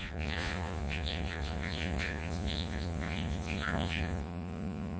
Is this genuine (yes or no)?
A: no